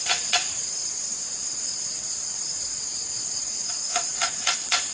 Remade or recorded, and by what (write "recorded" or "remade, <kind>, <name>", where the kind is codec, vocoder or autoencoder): remade, vocoder, WaveNeXt